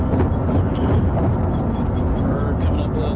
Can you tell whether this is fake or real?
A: real